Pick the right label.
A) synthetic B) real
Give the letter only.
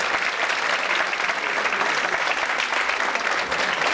B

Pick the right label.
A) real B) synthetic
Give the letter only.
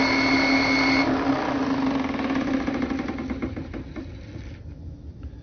A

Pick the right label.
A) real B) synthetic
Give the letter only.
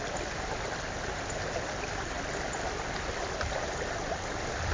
A